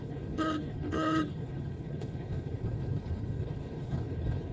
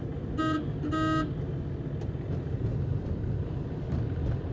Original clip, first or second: second